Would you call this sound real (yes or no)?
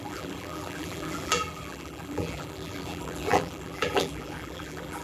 no